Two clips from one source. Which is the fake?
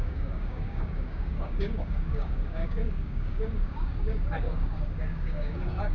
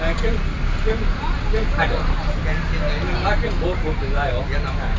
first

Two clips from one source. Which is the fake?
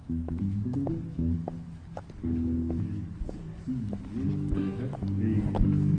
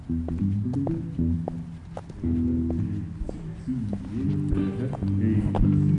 first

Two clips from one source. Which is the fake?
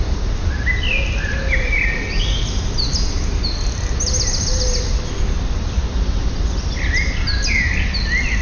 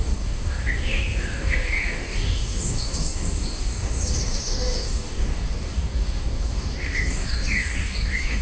second